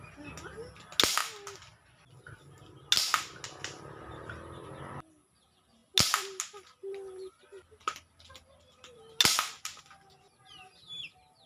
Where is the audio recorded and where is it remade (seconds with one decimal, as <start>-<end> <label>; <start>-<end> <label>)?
0.0-11.5 recorded